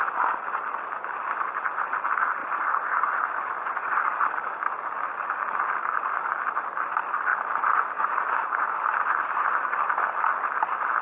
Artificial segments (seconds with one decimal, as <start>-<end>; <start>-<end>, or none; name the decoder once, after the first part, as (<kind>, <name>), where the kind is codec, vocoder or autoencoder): 2.4-4.0 (vocoder, Vocos)